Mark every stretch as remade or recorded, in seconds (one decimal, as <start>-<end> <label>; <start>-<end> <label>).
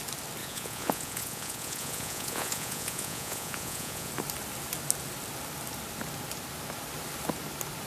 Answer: 0.0-0.4 recorded; 0.4-4.1 remade; 4.1-7.9 recorded